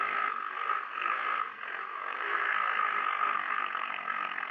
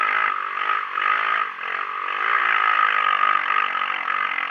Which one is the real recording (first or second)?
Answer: second